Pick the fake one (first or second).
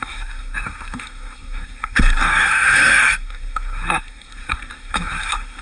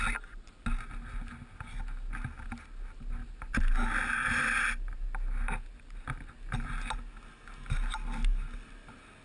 first